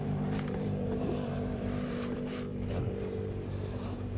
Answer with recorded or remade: remade